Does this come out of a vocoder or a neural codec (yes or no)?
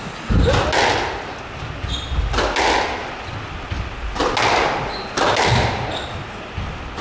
no